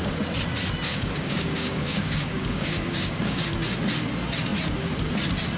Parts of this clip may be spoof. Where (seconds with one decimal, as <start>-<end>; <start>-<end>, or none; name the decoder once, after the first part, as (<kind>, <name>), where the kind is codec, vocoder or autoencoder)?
0.9-3.4 (codec, DAC)